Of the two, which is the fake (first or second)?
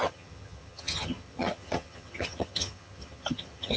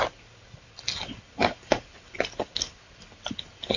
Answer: first